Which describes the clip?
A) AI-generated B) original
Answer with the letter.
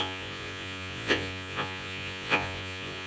A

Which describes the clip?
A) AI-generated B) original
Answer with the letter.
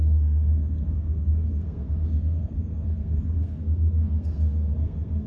A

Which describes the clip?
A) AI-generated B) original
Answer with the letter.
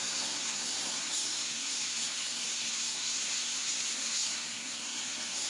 A